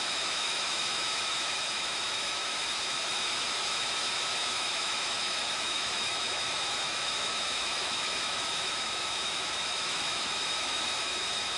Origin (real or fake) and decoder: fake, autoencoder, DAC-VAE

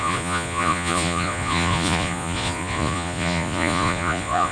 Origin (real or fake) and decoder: fake, vocoder, Vocos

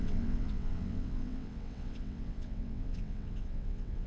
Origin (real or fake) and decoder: fake, vocoder, WaveNeXt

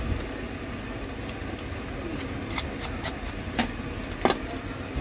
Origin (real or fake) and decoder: real